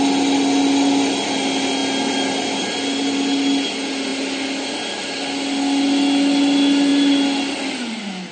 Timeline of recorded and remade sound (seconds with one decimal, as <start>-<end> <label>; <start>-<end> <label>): 0.0-8.3 recorded